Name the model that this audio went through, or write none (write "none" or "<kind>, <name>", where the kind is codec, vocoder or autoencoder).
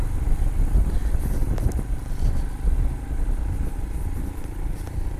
none